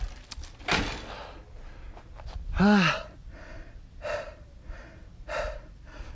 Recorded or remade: recorded